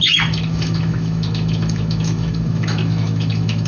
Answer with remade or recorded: remade